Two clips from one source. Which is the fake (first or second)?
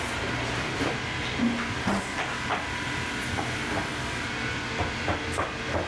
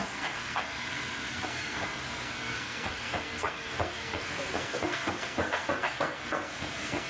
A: second